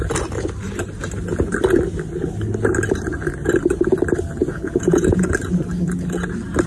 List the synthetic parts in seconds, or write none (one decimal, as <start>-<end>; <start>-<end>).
4.4-5.3